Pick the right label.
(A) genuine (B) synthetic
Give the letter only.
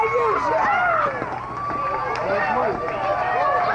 A